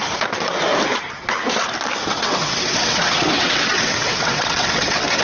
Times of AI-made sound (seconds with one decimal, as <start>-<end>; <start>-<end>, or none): 2.1-5.2